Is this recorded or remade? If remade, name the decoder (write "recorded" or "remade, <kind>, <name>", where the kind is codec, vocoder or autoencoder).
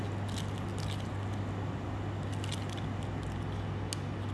recorded